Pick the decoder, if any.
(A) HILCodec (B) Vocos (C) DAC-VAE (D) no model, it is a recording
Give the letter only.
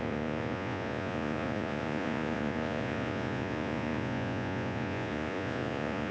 B